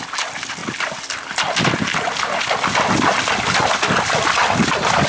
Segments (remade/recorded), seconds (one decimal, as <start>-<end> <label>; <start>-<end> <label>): 0.0-5.1 recorded